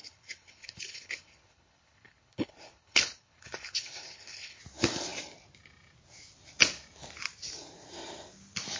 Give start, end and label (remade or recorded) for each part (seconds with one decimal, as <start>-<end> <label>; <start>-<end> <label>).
0.0-4.6 remade; 4.6-8.8 recorded